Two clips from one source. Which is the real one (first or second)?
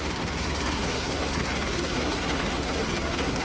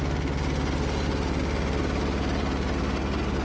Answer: second